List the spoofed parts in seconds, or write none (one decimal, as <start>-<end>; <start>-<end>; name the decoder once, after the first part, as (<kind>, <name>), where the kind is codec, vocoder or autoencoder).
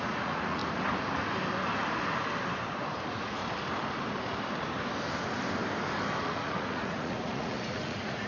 0.0-0.6 (vocoder, Vocos); 3.0-3.4; 6.2-8.3